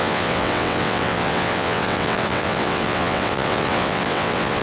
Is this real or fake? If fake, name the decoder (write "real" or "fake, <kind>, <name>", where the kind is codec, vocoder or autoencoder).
fake, vocoder, WaveNeXt